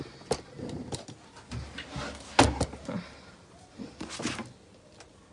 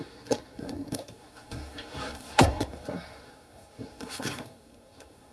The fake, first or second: second